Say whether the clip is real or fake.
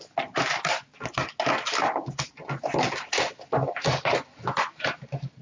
real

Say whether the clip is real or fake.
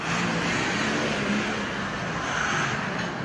real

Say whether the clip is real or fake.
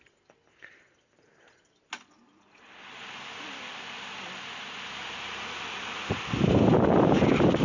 real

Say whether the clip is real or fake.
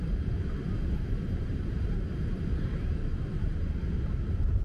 fake